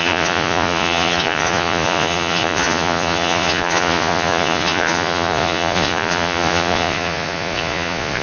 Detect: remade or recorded remade